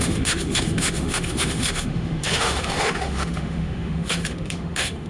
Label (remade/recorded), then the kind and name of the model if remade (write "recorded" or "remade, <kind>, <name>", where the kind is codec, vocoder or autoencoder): remade, autoencoder, DAC-VAE